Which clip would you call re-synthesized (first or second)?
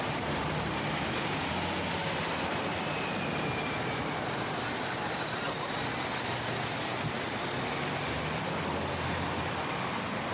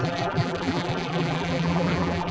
second